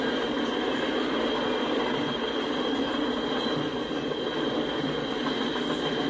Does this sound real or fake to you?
real